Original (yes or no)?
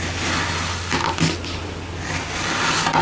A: yes